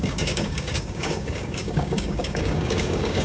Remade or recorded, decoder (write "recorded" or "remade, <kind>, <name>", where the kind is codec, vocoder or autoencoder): remade, codec, DAC